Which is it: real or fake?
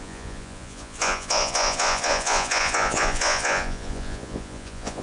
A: fake